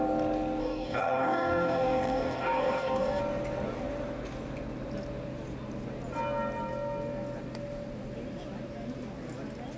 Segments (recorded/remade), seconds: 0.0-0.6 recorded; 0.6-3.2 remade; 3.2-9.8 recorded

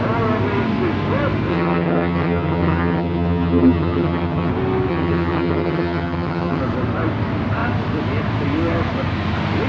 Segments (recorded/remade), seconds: 0.0-1.5 recorded; 1.5-4.5 remade; 4.5-4.9 recorded; 4.9-6.6 remade; 6.6-9.7 recorded

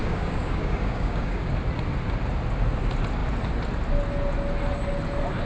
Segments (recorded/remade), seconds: 0.0-1.5 remade; 1.5-5.5 recorded

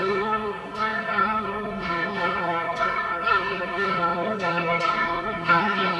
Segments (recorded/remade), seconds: 0.0-6.0 remade

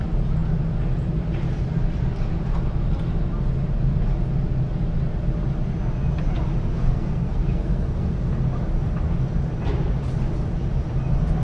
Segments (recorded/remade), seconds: 0.0-6.7 recorded; 6.7-8.3 remade; 8.3-11.4 recorded

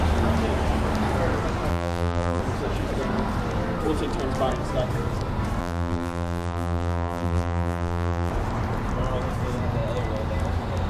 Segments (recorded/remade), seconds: 0.0-1.7 recorded; 1.7-2.4 remade; 2.4-5.6 recorded; 5.6-8.3 remade; 8.3-10.9 recorded

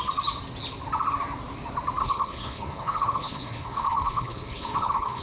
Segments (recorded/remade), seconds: 0.0-2.0 recorded; 2.0-5.2 remade